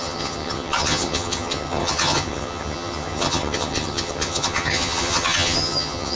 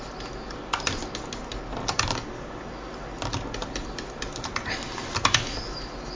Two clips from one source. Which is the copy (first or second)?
first